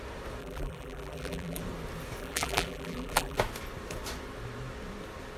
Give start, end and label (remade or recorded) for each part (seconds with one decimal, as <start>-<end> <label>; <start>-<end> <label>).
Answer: 0.0-0.4 recorded; 0.4-1.6 remade; 1.6-2.2 recorded; 2.2-3.4 remade; 3.4-5.4 recorded